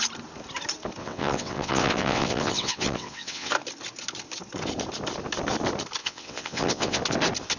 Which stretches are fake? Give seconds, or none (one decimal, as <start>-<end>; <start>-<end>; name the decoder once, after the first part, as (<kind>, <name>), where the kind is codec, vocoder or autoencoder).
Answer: 1.0-3.5 (vocoder, WaveNeXt); 6.0-7.0